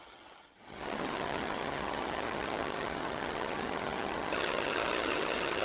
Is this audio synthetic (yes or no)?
yes